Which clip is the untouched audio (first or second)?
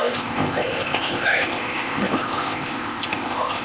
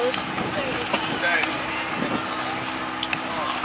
second